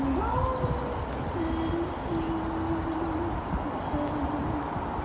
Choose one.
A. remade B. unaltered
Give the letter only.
B